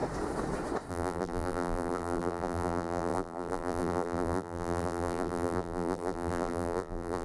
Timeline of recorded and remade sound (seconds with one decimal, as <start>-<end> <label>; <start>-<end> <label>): 0.0-0.9 recorded; 0.9-7.2 remade

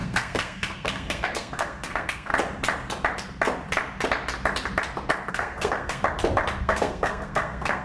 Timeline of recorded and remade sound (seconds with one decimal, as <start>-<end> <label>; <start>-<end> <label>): 0.0-2.3 remade; 2.3-5.3 recorded; 5.3-6.0 remade; 6.0-6.6 recorded; 6.6-7.8 remade

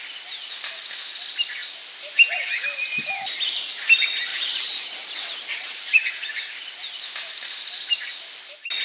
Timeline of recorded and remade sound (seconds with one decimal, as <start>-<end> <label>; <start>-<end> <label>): 0.0-4.3 recorded; 4.3-8.1 remade; 8.1-8.8 recorded

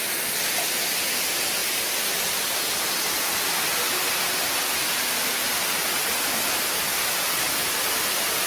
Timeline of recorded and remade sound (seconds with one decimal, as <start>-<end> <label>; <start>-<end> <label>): 0.0-1.6 recorded; 1.6-3.0 remade; 3.0-8.5 recorded